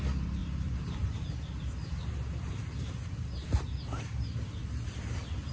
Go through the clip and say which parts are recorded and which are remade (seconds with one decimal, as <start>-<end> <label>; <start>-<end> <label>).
0.0-5.5 recorded